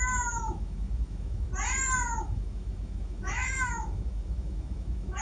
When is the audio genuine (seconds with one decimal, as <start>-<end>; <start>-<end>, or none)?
1.5-2.2